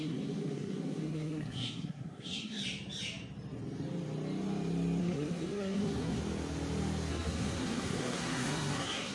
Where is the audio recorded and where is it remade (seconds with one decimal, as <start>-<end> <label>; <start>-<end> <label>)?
0.0-2.6 remade; 2.6-5.0 recorded; 5.0-6.2 remade; 6.2-7.1 recorded; 7.1-9.1 remade